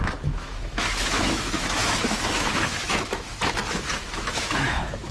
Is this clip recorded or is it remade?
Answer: remade